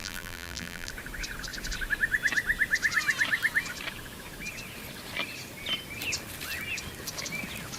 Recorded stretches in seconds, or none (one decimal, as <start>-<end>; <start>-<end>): 0.9-7.8